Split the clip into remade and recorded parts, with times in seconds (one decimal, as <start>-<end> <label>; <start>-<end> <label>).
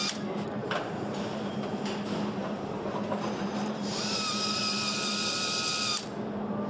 0.0-0.6 recorded; 0.6-1.5 remade; 1.5-2.4 recorded; 2.4-4.6 remade; 4.6-6.7 recorded